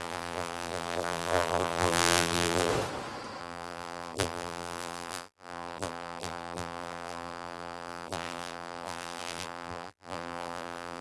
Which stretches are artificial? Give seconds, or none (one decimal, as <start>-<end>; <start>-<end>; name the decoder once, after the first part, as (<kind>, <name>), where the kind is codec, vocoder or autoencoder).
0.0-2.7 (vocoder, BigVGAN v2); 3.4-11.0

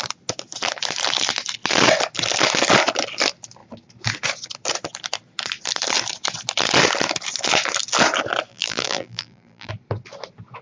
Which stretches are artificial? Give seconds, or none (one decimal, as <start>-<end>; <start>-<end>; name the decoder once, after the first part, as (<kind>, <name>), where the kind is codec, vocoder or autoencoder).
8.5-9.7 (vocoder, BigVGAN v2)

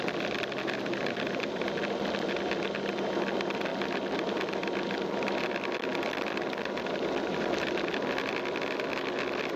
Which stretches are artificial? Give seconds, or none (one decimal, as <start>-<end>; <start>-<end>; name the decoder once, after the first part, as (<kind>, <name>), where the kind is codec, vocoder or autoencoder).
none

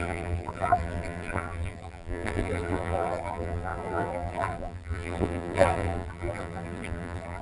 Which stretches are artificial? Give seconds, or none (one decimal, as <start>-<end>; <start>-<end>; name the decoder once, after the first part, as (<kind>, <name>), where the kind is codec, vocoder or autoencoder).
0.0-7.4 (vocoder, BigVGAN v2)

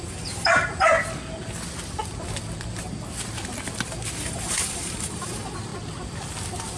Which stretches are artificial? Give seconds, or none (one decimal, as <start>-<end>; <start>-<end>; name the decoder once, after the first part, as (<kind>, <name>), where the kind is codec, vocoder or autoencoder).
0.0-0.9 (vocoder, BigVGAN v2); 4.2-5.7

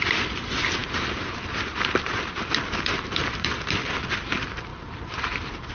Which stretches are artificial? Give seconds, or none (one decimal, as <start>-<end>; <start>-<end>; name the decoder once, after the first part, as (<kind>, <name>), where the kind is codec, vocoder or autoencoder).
0.8-3.1 (vocoder, BigVGAN v2); 4.7-5.7

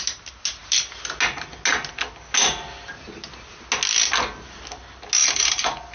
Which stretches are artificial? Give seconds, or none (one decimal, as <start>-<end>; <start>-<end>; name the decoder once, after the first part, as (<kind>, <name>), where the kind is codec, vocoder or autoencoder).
5.2-5.9 (vocoder, BigVGAN v2)

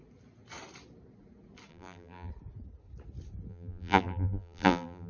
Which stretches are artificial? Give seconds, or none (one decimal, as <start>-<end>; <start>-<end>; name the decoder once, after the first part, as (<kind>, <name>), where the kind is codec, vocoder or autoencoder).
1.7-2.3 (vocoder, BigVGAN v2); 3.5-5.1